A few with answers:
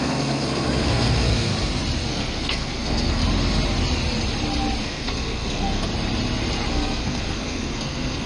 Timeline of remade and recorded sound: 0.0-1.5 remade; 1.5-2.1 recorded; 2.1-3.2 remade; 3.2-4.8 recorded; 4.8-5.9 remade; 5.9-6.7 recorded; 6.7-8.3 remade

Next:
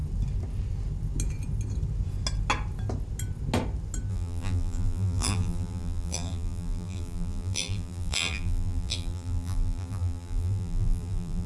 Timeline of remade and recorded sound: 0.0-4.1 recorded; 4.1-11.5 remade

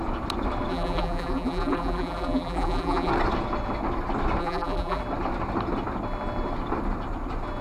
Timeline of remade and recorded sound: 0.0-0.7 recorded; 0.7-3.1 remade; 3.1-4.4 recorded; 4.4-5.0 remade; 5.0-7.6 recorded

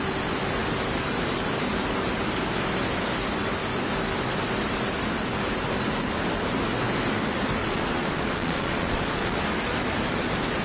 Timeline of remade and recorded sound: 0.0-7.6 recorded; 7.6-9.4 remade; 9.4-10.6 recorded